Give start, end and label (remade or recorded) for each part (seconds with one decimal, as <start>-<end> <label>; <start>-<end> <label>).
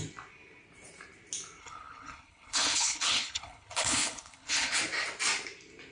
0.0-1.6 recorded; 1.6-4.8 remade; 4.8-5.9 recorded